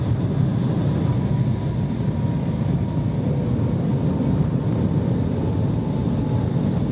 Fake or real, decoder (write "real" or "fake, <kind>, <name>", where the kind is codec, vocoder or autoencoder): real